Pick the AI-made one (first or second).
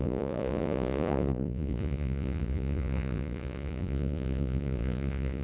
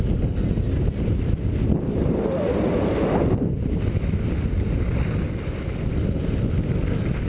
first